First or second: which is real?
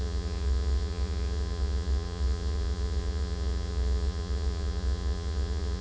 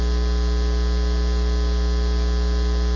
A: second